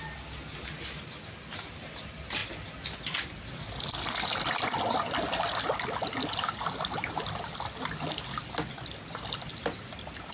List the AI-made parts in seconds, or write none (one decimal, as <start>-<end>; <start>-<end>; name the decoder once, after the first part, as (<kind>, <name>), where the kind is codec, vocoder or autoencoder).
none